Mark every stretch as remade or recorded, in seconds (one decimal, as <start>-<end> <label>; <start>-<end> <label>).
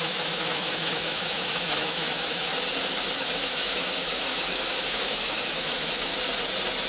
0.0-2.5 remade; 2.5-3.2 recorded; 3.2-6.1 remade; 6.1-6.9 recorded